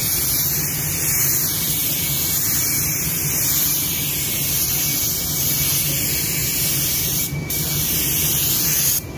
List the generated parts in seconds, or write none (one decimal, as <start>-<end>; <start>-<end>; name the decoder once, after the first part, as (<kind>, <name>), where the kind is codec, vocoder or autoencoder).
0.0-0.9 (vocoder, BigVGAN v2); 1.8-3.7; 6.4-9.2